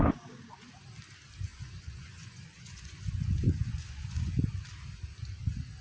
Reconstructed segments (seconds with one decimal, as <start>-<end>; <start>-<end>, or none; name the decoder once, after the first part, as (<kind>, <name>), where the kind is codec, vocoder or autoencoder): 1.5-4.3 (vocoder, Vocos)